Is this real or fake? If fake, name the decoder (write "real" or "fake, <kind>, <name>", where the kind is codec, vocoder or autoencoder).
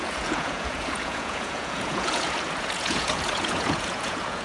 fake, vocoder, Vocos